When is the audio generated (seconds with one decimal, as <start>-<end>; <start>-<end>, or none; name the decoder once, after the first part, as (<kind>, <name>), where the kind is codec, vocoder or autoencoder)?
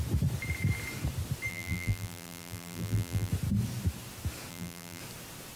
1.5-3.3 (vocoder, BigVGAN v2); 4.5-5.0